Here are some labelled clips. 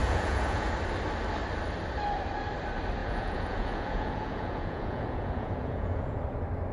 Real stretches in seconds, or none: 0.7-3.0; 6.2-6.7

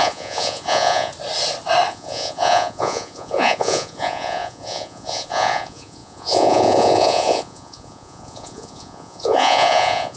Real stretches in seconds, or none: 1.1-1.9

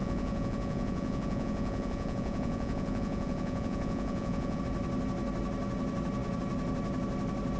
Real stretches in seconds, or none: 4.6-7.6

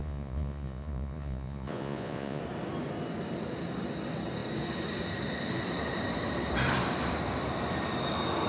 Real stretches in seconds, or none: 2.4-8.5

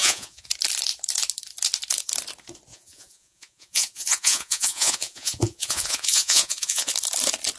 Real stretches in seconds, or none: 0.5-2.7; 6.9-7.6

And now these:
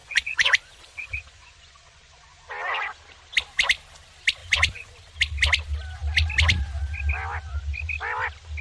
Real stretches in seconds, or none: 2.4-4.4; 4.9-8.6